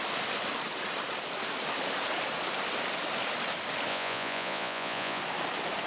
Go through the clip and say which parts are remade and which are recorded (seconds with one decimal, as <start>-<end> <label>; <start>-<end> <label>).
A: 0.0-3.9 recorded; 3.9-5.2 remade; 5.2-5.9 recorded